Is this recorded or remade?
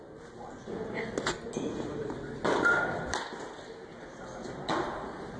recorded